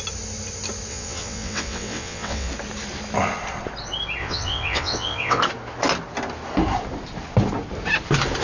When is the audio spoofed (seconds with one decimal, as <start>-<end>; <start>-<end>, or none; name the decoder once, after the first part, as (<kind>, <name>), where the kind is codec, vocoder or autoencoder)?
0.9-2.5 (vocoder, WaveNeXt); 4.2-5.4